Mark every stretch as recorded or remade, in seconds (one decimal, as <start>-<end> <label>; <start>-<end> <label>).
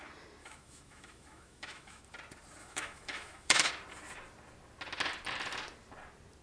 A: 0.0-0.4 recorded; 0.4-2.0 remade; 2.0-2.6 recorded; 2.6-3.7 remade; 3.7-6.4 recorded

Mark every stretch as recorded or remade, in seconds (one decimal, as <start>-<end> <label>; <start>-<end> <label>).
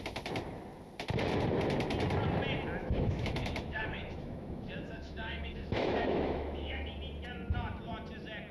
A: 0.0-2.8 recorded; 2.8-6.9 remade; 6.9-8.5 recorded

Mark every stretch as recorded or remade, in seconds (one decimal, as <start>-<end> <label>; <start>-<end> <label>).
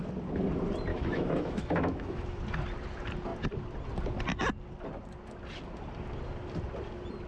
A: 0.0-0.9 recorded; 0.9-2.4 remade; 2.4-7.3 recorded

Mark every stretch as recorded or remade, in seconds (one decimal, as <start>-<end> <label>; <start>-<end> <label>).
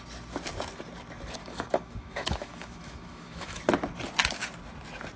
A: 0.0-1.4 recorded; 1.4-3.6 remade; 3.6-5.2 recorded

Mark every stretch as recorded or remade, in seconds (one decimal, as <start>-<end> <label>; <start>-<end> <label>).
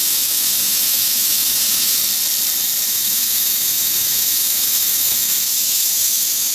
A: 0.0-2.0 remade; 2.0-2.9 recorded; 2.9-6.5 remade